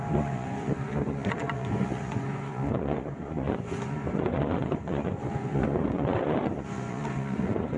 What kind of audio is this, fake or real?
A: fake